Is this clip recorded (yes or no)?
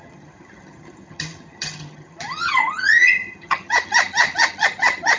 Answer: no